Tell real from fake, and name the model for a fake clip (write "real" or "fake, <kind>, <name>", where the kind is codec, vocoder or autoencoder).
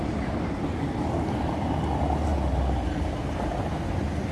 real